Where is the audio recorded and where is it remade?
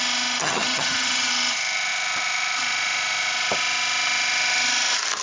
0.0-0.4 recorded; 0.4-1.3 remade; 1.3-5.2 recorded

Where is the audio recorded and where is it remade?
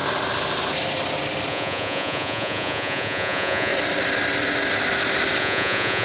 0.0-1.5 recorded; 1.5-3.7 remade; 3.7-5.4 recorded; 5.4-6.0 remade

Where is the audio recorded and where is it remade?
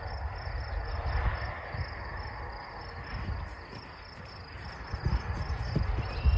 0.0-6.4 recorded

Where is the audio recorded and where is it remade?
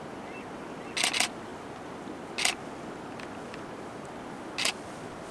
0.0-5.3 recorded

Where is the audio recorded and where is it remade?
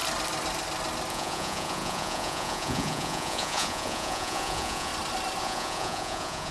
0.0-1.1 recorded; 1.1-4.9 remade; 4.9-5.4 recorded; 5.4-6.5 remade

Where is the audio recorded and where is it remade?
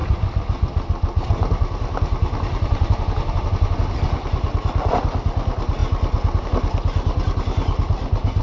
0.0-8.4 recorded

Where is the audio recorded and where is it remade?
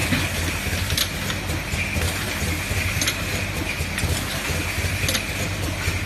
0.0-6.1 recorded